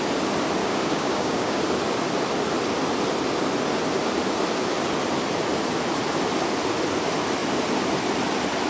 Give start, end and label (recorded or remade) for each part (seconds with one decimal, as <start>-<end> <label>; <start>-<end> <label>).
0.0-0.6 recorded; 0.6-1.6 remade; 1.6-8.7 recorded